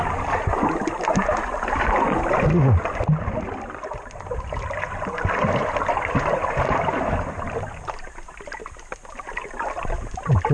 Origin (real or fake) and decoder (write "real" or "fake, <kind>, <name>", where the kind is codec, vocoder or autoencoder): real